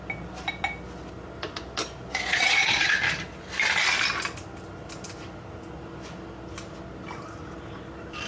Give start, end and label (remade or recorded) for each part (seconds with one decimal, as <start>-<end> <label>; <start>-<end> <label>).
0.0-2.1 recorded; 2.1-2.9 remade; 2.9-8.3 recorded